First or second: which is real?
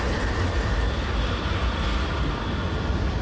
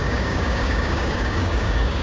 first